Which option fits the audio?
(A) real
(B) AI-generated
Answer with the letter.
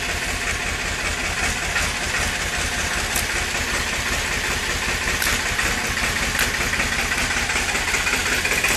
A